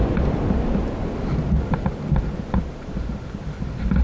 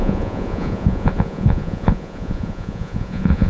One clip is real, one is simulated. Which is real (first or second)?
first